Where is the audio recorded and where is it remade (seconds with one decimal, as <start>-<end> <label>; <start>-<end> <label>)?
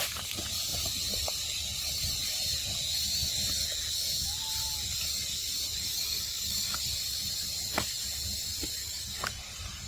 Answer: 0.0-5.8 recorded; 5.8-6.9 remade; 6.9-8.8 recorded; 8.8-9.3 remade; 9.3-9.9 recorded